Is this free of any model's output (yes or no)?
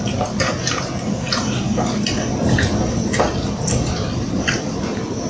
yes